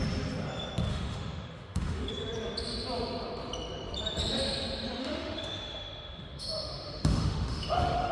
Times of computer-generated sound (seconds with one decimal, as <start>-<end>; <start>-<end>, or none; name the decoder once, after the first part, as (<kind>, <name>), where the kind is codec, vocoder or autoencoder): 0.9-2.1 (autoencoder, DAC-VAE); 5.0-8.1